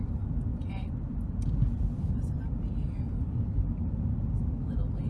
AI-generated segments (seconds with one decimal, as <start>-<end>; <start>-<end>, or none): 0.5-1.5